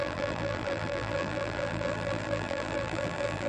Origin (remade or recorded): remade